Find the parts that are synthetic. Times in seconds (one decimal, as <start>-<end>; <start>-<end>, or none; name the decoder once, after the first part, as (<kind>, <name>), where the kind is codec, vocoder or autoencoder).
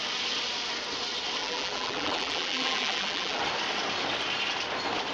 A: 1.4-3.4 (vocoder, BigVGAN v2)